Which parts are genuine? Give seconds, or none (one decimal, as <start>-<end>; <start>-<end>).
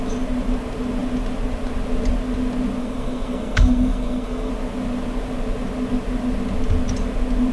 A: 0.0-2.8; 4.5-7.5